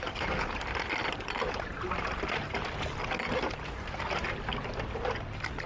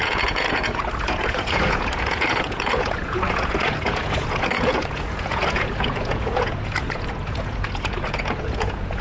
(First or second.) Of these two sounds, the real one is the first